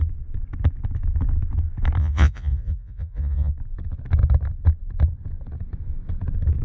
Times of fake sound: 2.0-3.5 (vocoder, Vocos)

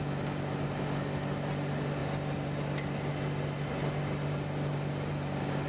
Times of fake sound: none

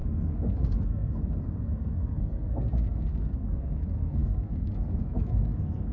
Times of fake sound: 0.0-5.9 (codec, SNAC)

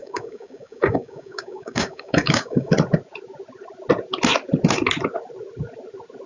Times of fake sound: 0.0-2.7 (codec, DAC)

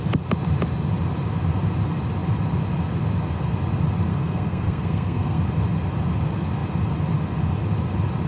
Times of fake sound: 4.1-5.4 (codec, SNAC)

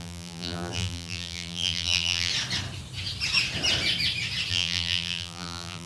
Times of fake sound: 0.0-2.3 (vocoder, BigVGAN v2); 4.5-5.9

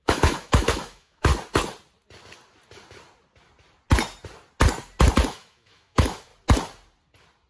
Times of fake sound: 0.0-1.3 (autoencoder, DAC-VAE); 5.3-6.3